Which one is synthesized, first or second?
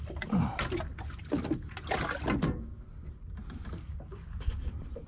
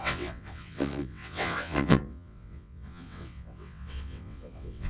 second